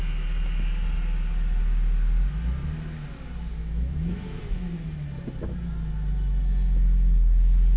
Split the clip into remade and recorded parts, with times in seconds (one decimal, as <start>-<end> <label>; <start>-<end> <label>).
0.0-3.6 recorded; 3.6-4.4 remade; 4.4-7.8 recorded